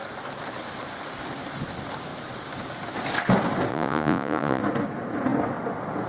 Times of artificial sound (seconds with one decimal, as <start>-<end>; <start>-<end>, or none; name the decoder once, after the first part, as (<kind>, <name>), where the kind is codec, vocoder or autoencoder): 3.7-4.6 (vocoder, Vocos)